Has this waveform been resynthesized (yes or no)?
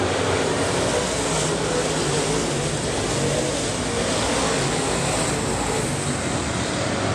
no